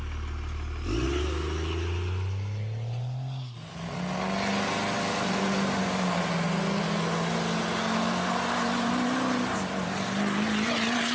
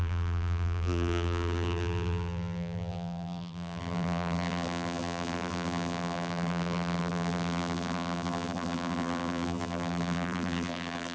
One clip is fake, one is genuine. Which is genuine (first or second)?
first